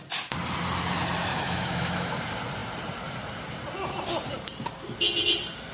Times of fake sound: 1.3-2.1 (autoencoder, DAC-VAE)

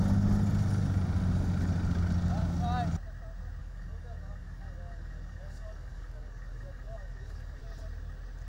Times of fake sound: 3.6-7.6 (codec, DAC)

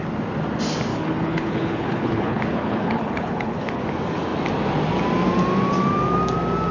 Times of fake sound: 0.9-3.8 (codec, HILCodec)

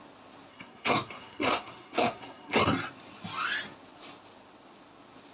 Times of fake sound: 0.5-2.6 (codec, SNAC)

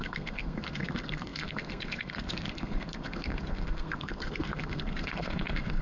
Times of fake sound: 0.0-5.8 (codec, SNAC)

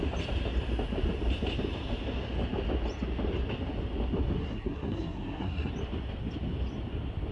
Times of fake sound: 4.4-5.7 (codec, SNAC)

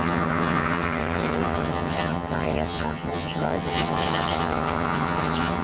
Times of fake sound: 0.0-5.6 (vocoder, HiFi-GAN)

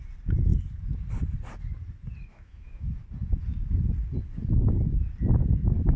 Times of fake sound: 2.3-2.9 (autoencoder, DAC-VAE)